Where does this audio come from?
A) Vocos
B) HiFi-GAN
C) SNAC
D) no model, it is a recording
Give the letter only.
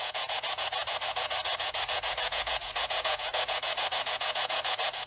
A